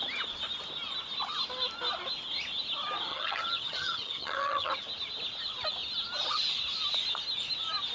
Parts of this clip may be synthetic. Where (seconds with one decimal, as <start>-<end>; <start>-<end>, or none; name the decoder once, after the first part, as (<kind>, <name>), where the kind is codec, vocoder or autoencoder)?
3.1-4.7 (vocoder, HiFi-GAN)